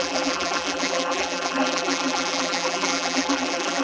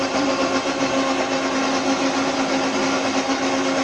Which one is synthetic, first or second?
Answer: first